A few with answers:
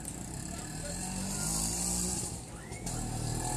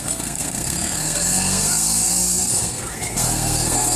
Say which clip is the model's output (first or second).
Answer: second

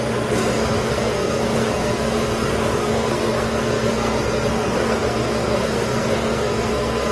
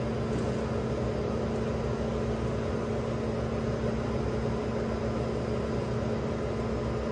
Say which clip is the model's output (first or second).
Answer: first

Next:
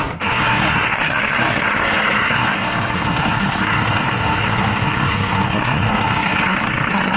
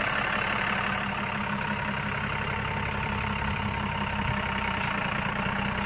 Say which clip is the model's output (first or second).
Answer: first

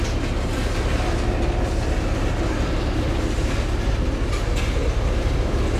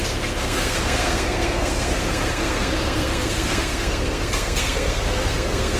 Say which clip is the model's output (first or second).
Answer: second